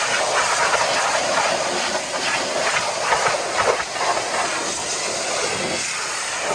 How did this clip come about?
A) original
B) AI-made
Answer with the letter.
A